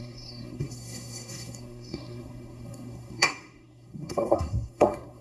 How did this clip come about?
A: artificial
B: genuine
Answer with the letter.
A